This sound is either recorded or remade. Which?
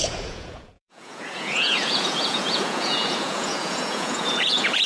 remade